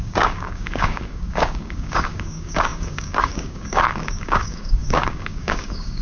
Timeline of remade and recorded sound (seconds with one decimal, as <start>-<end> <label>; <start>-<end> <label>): 0.0-6.0 remade